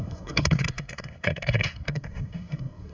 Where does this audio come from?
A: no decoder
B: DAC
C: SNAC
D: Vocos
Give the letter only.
C